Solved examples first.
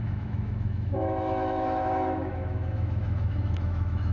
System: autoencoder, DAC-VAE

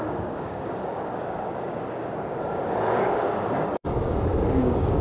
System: codec, DAC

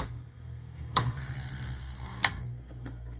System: codec, SNAC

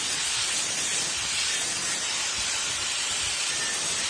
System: none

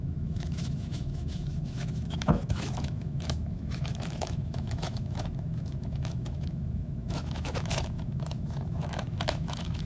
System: autoencoder, DAC-VAE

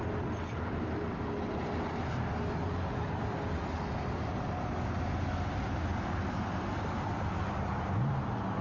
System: none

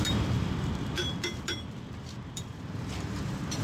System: vocoder, BigVGAN v2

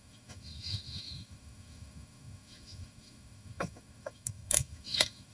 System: autoencoder, DAC-VAE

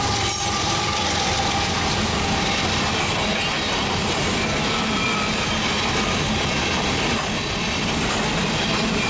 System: vocoder, BigVGAN v2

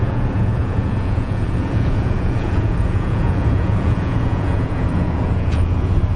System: vocoder, Vocos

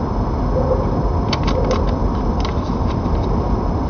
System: none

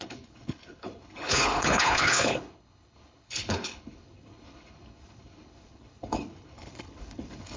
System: codec, HILCodec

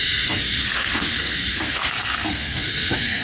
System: codec, SNAC